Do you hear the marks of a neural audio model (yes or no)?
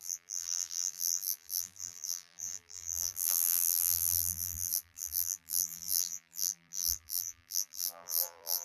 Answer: yes